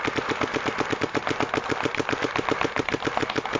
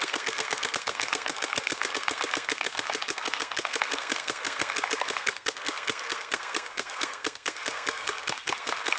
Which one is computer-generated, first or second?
second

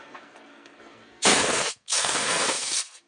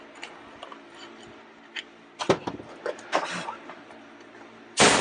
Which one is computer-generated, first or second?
first